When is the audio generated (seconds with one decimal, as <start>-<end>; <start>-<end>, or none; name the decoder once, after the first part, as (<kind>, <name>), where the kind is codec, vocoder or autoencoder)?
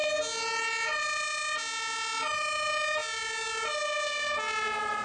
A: none